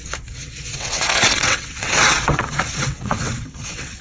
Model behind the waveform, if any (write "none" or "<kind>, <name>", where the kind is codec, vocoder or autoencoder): vocoder, WaveNeXt